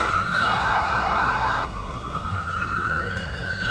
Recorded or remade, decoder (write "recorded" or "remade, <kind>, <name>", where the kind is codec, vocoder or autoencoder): remade, codec, SNAC